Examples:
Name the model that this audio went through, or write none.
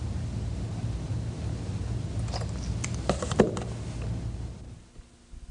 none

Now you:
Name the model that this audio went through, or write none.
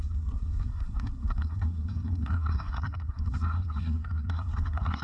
codec, SNAC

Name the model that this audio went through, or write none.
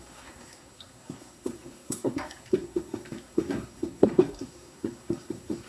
codec, SNAC